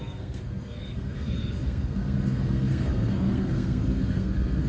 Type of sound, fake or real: fake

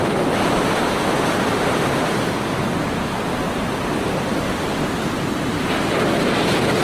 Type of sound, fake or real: real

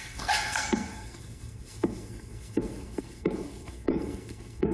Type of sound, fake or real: fake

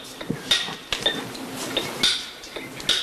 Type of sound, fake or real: real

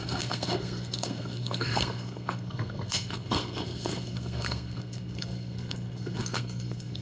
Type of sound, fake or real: fake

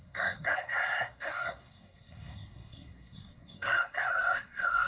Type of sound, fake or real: fake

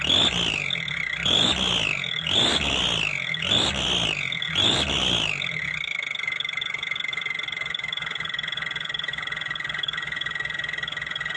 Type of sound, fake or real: real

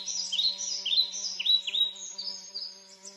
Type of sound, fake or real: real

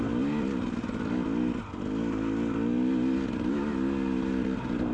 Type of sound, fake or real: real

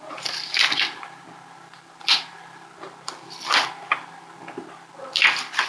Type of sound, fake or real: real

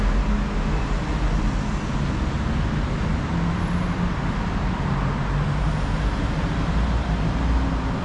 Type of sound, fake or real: real